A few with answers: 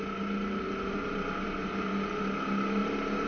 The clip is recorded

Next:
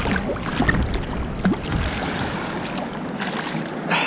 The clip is recorded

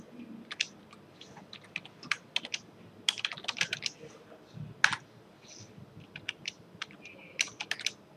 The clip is recorded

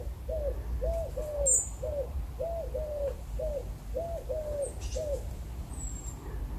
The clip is recorded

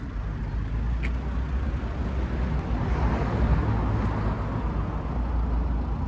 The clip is recorded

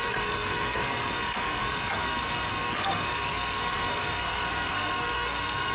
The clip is remade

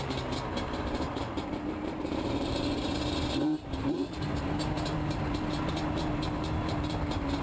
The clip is remade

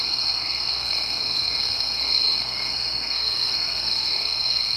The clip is remade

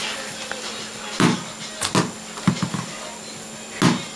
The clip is recorded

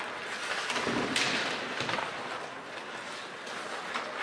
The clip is recorded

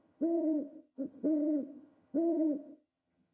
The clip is remade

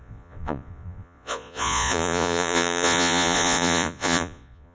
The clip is remade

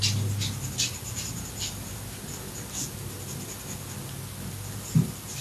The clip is recorded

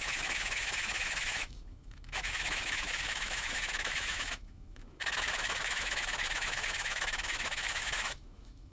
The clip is remade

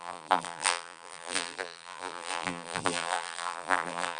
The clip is remade